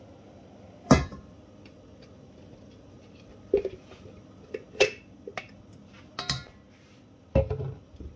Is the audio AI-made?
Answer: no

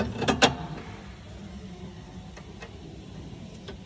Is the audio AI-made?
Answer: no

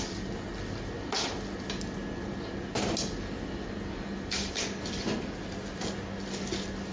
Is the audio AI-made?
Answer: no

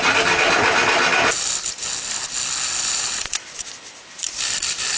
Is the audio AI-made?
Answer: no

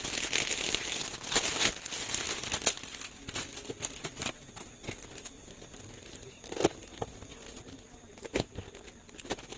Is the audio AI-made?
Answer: no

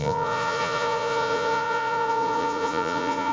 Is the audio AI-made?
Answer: yes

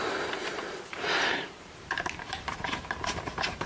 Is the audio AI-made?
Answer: yes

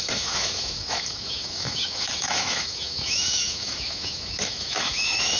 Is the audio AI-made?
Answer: yes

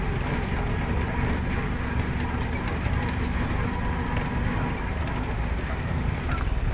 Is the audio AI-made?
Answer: no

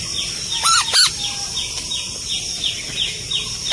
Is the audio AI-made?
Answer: no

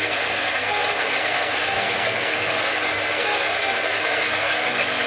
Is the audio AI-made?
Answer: yes